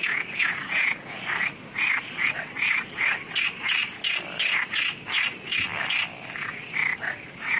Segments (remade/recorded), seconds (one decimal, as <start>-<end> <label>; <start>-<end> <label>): 0.0-1.2 remade; 1.2-7.6 recorded